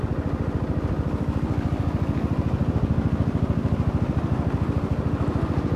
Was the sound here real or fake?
real